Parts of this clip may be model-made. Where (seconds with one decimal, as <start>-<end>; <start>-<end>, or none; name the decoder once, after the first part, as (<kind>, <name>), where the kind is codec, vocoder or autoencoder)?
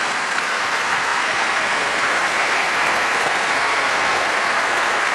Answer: 0.0-5.1 (codec, SNAC)